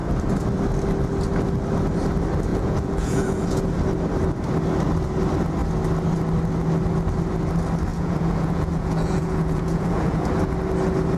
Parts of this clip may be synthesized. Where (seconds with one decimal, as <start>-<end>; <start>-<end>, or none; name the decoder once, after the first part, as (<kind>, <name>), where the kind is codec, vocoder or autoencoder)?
2.5-3.6 (vocoder, Vocos); 7.9-10.3